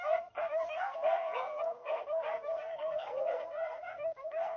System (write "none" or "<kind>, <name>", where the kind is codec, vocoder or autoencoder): codec, SNAC